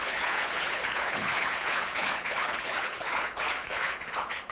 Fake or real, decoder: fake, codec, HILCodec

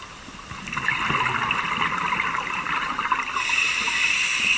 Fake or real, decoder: real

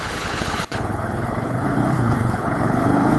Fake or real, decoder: fake, codec, HILCodec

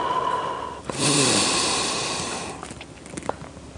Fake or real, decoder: real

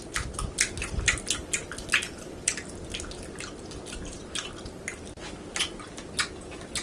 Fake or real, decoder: real